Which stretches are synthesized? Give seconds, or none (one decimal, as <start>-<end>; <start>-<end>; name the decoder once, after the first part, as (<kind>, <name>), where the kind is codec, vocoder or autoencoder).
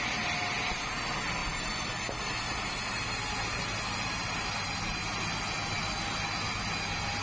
none